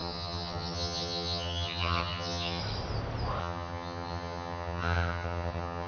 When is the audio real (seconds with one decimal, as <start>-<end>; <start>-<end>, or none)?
2.6-3.4